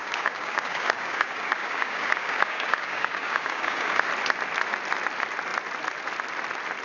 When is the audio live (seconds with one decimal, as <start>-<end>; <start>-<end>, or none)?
4.1-6.8